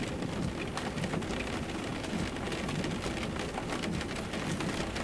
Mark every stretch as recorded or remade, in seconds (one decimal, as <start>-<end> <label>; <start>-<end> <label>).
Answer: 0.0-5.0 recorded